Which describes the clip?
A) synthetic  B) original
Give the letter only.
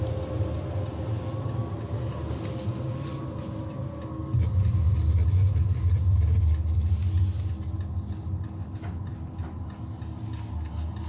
B